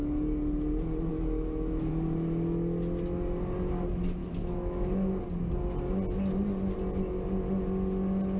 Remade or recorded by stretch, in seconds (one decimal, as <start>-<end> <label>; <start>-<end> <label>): 0.0-1.1 recorded; 1.1-1.9 remade; 1.9-4.2 recorded; 4.2-5.1 remade; 5.1-8.4 recorded